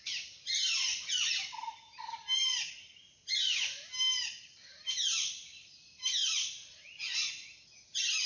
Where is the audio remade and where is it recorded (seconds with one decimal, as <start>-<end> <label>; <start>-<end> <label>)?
0.0-6.2 recorded; 6.2-7.3 remade; 7.3-8.3 recorded